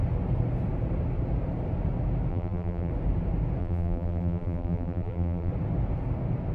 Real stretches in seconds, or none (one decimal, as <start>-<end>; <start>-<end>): 0.0-2.3; 2.9-3.6; 5.5-6.5